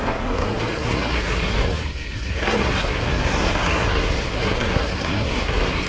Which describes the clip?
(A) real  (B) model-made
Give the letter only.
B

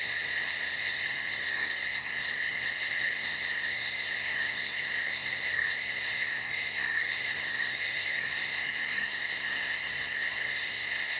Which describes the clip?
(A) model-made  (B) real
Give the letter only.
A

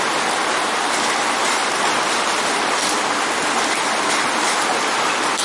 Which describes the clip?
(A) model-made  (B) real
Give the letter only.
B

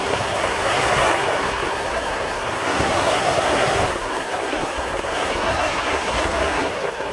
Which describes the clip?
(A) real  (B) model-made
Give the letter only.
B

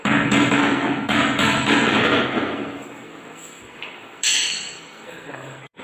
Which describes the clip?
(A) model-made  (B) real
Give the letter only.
A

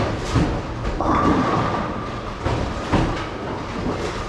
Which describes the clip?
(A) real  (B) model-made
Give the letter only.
A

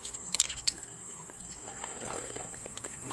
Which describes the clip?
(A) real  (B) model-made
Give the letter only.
B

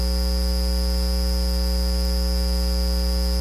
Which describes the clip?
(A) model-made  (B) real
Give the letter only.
B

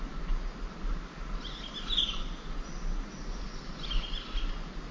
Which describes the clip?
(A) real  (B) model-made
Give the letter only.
A